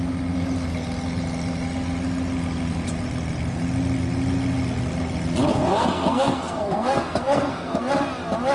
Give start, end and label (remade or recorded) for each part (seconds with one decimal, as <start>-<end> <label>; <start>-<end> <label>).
0.0-5.5 recorded; 5.5-7.9 remade; 7.9-8.5 recorded